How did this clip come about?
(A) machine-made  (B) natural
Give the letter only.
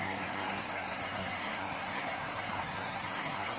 A